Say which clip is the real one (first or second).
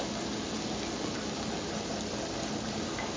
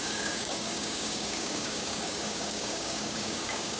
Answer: first